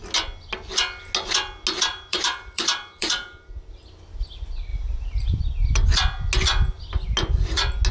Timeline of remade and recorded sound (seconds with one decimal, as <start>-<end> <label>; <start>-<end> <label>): 0.0-1.9 recorded; 1.9-3.5 remade; 3.5-4.7 recorded; 4.7-5.4 remade; 5.4-7.9 recorded